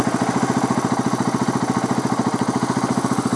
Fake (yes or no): no